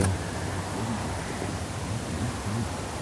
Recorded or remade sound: remade